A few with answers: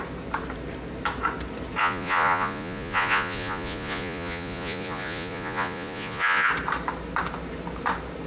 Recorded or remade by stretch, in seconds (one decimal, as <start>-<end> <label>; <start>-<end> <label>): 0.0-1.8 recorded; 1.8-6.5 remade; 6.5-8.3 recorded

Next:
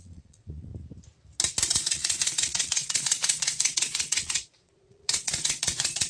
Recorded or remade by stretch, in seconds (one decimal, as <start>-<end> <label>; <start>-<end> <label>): 0.0-0.7 remade; 0.7-1.7 recorded; 1.7-6.1 remade

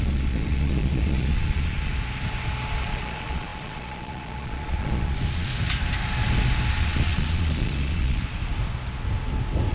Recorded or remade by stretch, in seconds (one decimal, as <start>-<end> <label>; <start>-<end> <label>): 0.0-1.9 remade; 1.9-2.8 recorded; 2.8-5.5 remade; 5.5-6.8 recorded; 6.8-8.4 remade; 8.4-9.7 recorded

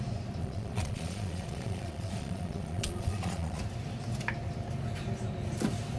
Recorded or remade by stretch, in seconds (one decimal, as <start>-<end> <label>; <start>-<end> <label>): 0.0-0.4 recorded; 0.4-3.6 remade; 3.6-6.0 recorded

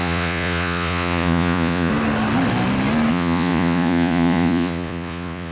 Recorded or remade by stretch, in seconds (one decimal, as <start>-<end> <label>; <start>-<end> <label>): 0.0-1.9 remade; 1.9-3.1 recorded; 3.1-5.5 remade

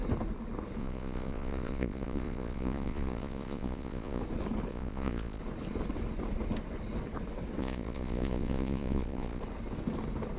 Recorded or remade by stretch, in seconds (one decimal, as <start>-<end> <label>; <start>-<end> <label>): 0.0-0.8 recorded; 0.8-4.2 remade; 4.2-4.7 recorded; 4.7-5.4 remade; 5.4-7.6 recorded; 7.6-9.4 remade; 9.4-10.4 recorded